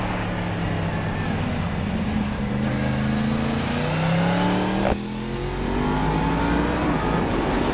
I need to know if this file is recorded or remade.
recorded